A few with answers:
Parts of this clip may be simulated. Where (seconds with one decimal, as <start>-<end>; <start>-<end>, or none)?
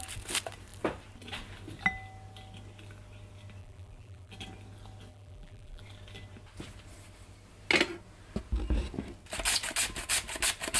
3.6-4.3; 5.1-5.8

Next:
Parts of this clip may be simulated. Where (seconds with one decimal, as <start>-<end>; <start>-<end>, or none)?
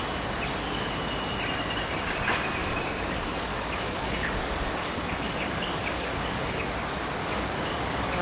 2.6-6.7; 7.2-8.2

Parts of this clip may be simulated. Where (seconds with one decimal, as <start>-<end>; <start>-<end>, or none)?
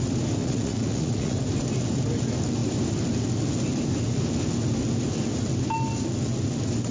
0.4-1.4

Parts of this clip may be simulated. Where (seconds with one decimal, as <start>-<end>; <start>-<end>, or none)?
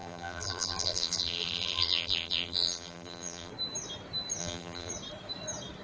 0.0-3.5; 4.4-4.9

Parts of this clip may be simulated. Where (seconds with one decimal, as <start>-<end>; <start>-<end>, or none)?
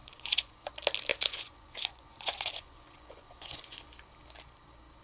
0.0-0.7; 1.1-3.9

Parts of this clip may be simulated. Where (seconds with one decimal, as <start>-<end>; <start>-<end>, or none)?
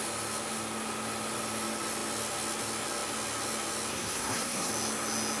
3.9-4.7